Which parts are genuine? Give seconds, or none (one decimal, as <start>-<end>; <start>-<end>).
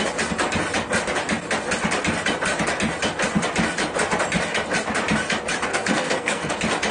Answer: 0.0-5.7; 6.5-6.9